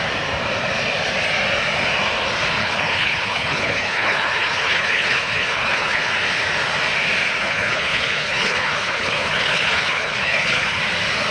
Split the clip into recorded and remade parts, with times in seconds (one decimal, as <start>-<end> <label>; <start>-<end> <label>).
0.0-2.6 recorded; 2.6-6.0 remade; 6.0-7.4 recorded; 7.4-10.8 remade; 10.8-11.3 recorded